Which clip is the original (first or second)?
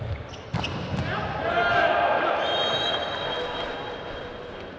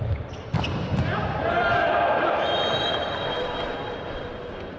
first